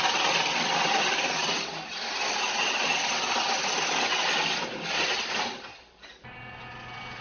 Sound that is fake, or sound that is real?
real